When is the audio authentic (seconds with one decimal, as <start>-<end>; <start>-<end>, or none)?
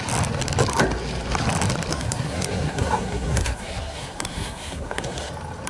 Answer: 0.0-1.9; 5.3-5.7